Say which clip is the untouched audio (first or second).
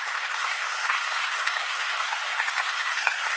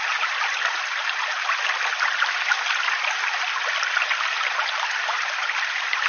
second